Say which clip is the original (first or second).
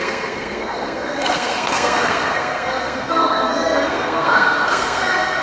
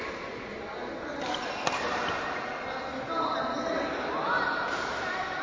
second